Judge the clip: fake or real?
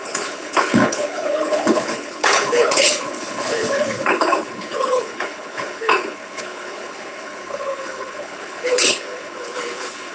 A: fake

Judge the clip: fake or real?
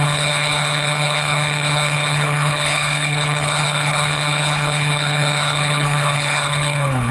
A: fake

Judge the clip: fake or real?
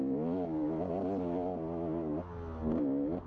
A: real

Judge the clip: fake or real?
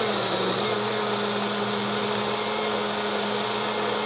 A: real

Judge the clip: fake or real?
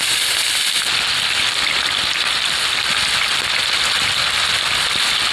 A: real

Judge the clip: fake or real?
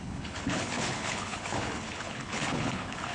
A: fake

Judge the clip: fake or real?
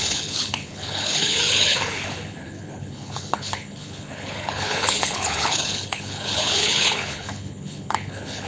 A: fake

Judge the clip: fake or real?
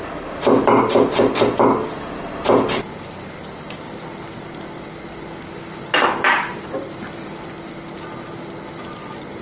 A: real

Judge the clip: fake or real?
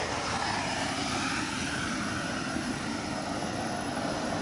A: real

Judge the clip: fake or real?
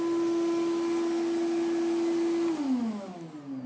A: real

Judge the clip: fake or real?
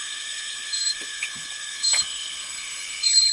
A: fake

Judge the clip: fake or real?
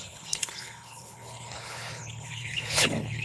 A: fake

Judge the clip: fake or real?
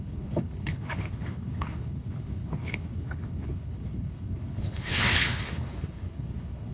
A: fake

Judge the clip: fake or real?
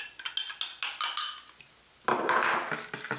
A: real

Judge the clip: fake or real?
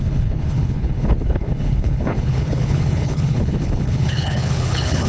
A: fake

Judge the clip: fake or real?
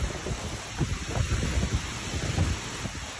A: real